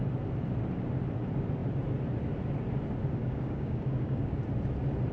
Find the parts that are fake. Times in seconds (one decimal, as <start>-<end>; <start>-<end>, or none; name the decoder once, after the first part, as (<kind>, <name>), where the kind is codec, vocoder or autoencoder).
3.2-4.4 (codec, DAC)